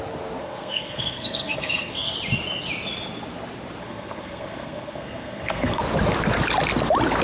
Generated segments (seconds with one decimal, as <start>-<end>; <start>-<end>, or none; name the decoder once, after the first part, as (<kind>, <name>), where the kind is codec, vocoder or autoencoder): 0.4-2.1 (codec, SNAC); 3.8-5.8